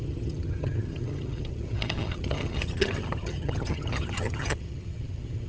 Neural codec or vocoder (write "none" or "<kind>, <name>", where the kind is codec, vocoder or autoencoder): vocoder, HiFi-GAN